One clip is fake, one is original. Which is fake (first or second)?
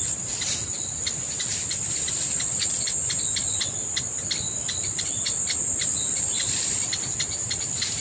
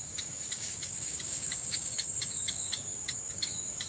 second